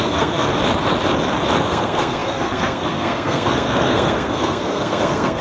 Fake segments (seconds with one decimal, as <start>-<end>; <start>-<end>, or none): 0.0-0.5; 1.6-5.4